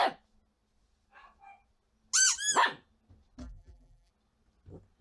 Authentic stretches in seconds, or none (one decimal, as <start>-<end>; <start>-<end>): 0.0-3.4; 4.1-5.0